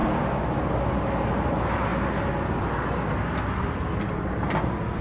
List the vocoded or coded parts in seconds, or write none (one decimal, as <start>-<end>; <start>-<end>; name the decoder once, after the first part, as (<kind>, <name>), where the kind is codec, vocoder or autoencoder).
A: none

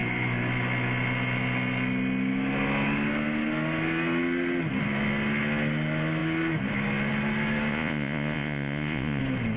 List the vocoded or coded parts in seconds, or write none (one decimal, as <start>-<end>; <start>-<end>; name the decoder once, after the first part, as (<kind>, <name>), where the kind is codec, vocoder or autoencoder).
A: 7.7-9.2 (vocoder, Vocos)